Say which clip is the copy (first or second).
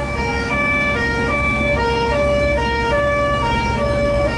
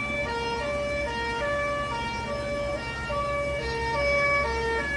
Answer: first